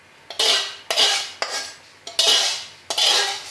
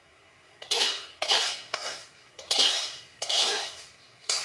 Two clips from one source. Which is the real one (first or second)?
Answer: first